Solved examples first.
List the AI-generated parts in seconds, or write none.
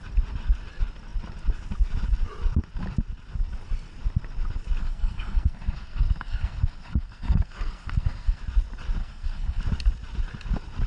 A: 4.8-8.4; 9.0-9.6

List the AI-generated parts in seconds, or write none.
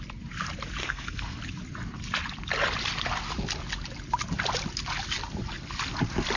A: 0.8-1.4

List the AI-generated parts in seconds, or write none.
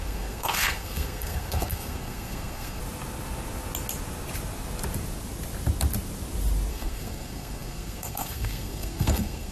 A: 0.0-2.8; 6.7-9.5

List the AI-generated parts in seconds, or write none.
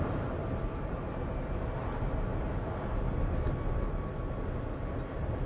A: none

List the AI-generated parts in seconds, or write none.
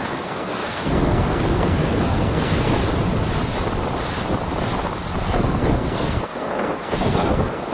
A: 0.0-2.8; 5.2-7.7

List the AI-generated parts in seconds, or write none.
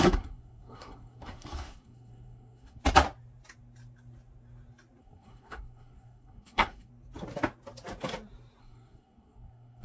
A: 0.0-2.8; 5.0-6.9; 8.6-9.8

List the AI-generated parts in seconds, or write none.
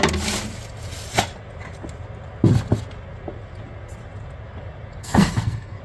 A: 5.0-5.8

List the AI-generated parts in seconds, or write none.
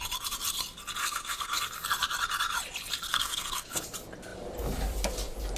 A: 1.0-1.6; 3.1-3.8